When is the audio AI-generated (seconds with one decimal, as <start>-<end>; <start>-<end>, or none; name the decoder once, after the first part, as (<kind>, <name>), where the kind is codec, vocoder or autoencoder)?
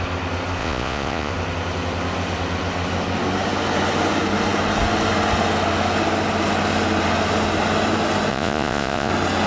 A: 0.6-1.3 (vocoder, Vocos); 8.3-9.1